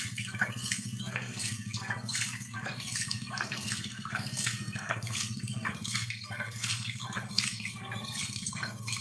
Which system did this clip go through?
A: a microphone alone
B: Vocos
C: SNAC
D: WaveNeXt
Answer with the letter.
C